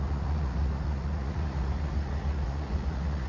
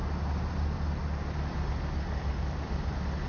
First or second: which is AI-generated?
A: first